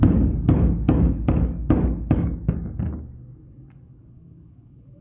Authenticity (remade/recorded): remade